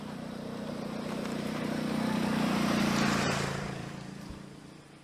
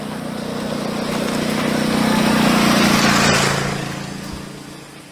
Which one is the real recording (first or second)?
second